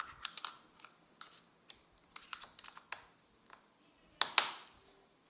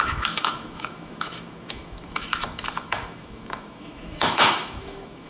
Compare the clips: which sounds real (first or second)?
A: first